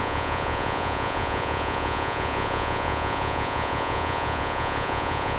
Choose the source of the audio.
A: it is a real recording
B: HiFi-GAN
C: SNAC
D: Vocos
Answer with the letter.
D